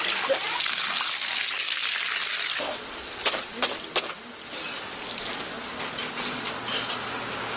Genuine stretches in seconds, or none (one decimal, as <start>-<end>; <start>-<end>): 0.0-7.6